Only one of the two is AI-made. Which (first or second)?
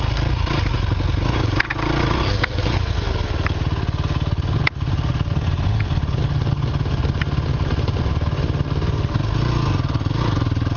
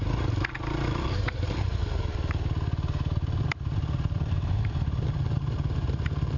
second